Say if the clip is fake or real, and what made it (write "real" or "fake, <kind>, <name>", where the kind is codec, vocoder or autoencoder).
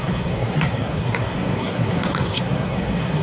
fake, codec, SNAC